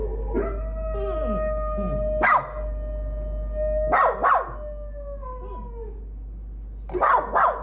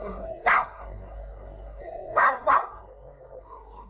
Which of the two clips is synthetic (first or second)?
second